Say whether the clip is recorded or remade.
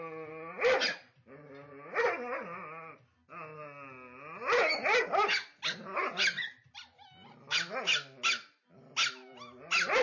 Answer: recorded